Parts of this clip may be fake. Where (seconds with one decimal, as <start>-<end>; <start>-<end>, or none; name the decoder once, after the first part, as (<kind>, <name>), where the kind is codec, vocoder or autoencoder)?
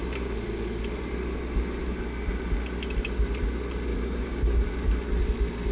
3.9-4.5 (codec, DAC)